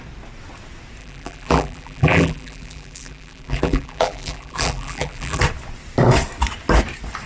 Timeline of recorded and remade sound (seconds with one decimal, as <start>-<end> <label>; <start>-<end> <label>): 0.0-1.0 recorded; 1.0-5.4 remade; 5.4-7.3 recorded